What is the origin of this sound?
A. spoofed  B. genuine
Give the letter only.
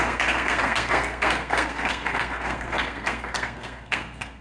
A